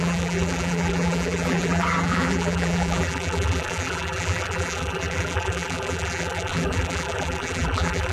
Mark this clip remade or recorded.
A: remade